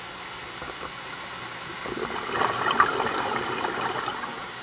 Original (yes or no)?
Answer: yes